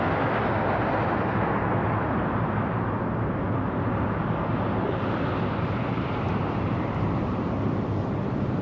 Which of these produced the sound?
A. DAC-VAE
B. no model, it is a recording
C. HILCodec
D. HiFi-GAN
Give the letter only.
B